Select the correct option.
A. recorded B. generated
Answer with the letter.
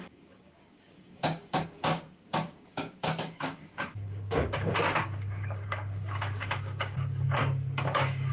B